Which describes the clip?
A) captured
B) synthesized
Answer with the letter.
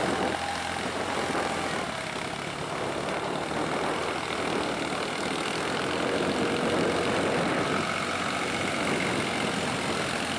A